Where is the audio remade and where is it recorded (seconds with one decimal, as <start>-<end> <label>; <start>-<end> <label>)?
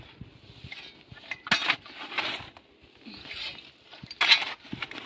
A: 0.0-5.1 recorded